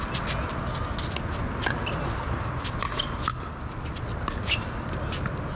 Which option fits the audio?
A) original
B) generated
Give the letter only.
A